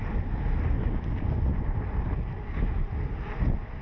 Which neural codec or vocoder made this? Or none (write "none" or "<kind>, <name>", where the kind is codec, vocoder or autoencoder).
none